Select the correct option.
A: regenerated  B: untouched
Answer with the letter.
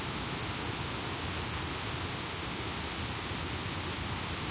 B